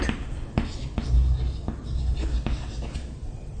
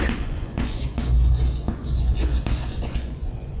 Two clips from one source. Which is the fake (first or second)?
second